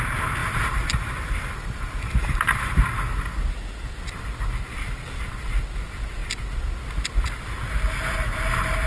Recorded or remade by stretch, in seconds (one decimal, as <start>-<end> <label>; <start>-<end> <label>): 0.0-0.4 recorded; 0.4-2.8 remade; 2.8-8.9 recorded